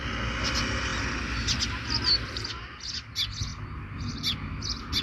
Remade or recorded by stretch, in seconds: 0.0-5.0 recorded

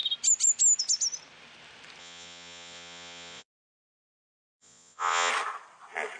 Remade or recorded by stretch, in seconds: 0.0-2.0 recorded; 2.0-5.3 remade; 5.3-6.2 recorded

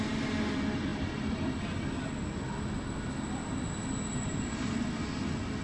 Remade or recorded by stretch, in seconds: 0.0-5.6 recorded

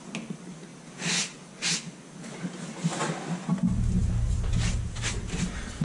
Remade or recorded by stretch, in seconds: 0.0-5.8 recorded